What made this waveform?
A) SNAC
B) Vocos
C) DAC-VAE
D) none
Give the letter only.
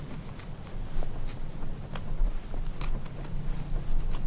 D